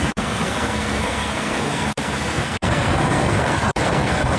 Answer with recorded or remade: remade